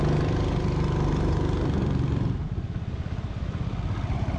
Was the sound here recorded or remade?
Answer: recorded